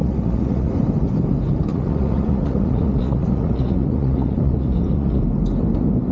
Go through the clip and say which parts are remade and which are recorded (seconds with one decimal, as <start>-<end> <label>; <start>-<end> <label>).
0.0-0.7 remade; 0.7-1.7 recorded; 1.7-5.2 remade; 5.2-6.1 recorded